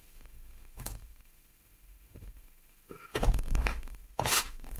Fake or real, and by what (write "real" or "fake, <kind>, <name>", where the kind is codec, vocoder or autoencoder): fake, autoencoder, DAC-VAE